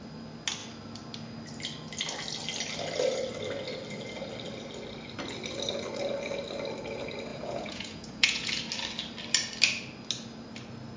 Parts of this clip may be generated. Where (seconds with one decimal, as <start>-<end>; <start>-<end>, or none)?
7.3-8.5